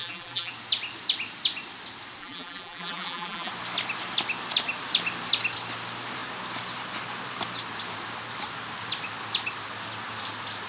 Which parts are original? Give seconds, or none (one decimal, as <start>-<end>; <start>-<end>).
0.5-2.2; 3.5-10.7